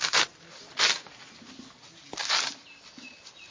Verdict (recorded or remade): recorded